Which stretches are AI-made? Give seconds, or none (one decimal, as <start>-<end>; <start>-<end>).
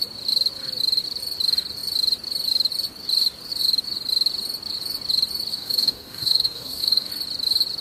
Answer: 5.5-7.1